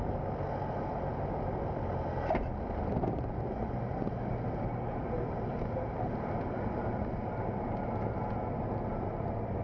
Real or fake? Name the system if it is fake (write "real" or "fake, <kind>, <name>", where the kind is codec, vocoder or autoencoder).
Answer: real